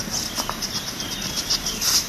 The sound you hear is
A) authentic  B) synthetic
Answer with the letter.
A